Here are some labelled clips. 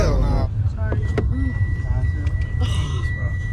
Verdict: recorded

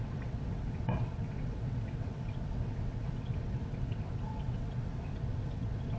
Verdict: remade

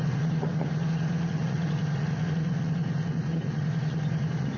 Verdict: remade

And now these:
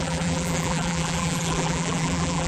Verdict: remade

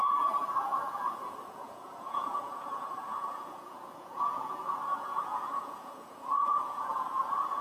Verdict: remade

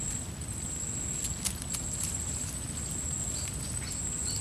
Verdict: recorded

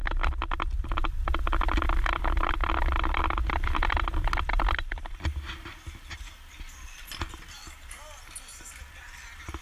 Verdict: recorded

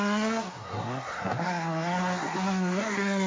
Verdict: remade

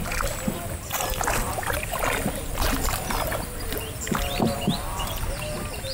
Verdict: recorded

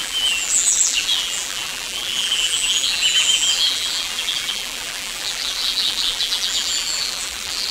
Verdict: remade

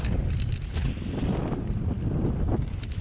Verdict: recorded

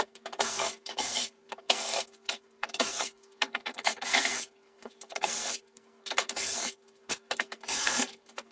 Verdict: remade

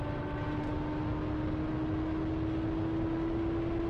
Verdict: recorded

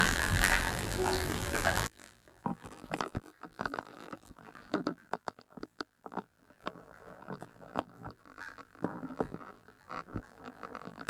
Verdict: remade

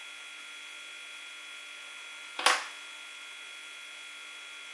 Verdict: recorded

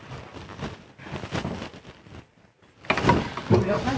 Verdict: recorded